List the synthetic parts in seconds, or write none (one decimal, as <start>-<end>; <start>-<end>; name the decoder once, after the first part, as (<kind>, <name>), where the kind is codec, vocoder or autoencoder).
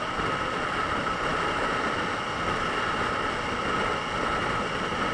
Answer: none